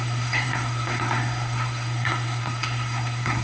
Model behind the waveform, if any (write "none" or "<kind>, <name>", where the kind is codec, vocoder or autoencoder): codec, SNAC